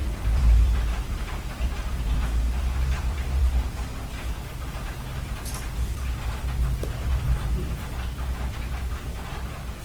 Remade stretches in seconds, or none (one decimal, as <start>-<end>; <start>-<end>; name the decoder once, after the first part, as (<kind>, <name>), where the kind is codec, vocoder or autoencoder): 0.0-3.4 (vocoder, BigVGAN v2)